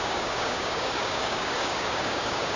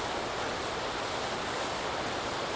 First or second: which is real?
second